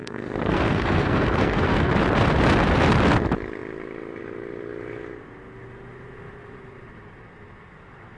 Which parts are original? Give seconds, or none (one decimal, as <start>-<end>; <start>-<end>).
1.9-8.2